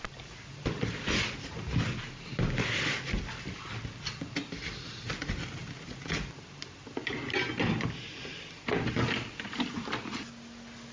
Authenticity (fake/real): real